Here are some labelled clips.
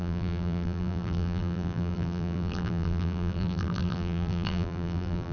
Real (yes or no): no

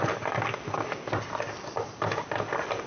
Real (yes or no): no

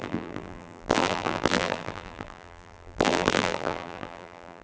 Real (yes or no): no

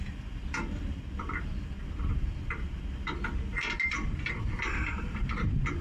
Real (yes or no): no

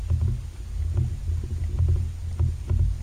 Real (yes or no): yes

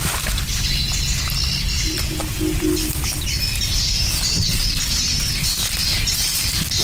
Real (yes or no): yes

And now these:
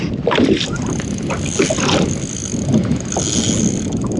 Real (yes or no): yes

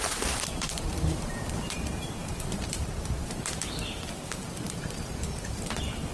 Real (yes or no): no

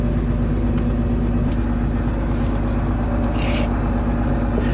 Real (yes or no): yes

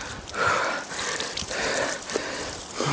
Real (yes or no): yes